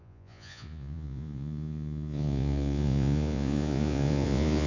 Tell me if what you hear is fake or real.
fake